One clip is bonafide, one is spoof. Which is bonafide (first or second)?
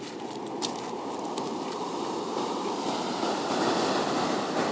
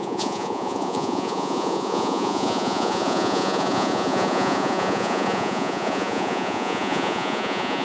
first